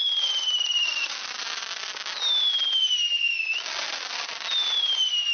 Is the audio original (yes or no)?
yes